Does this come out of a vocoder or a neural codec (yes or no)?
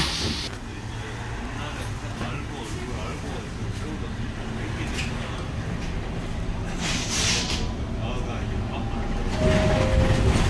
no